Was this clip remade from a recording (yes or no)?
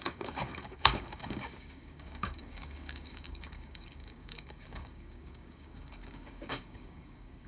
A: yes